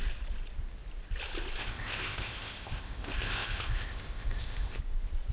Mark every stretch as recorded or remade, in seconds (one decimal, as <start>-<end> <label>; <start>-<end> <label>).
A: 0.0-1.6 recorded; 1.6-4.8 remade; 4.8-5.3 recorded